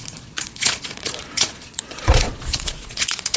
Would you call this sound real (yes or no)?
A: no